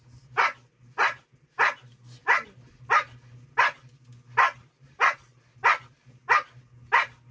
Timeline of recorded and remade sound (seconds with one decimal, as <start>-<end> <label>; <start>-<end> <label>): 0.0-7.3 recorded